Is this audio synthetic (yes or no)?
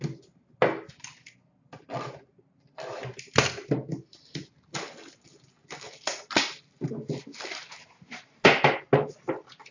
no